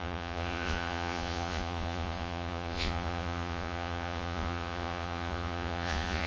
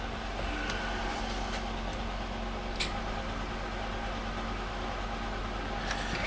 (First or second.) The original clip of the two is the second